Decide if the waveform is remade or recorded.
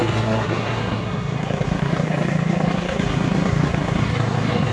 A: remade